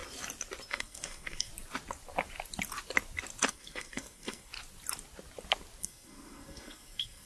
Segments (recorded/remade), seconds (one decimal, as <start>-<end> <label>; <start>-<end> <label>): 0.0-0.7 recorded; 0.7-1.5 remade; 1.5-3.5 recorded; 3.5-4.5 remade; 4.5-5.8 recorded; 5.8-7.3 remade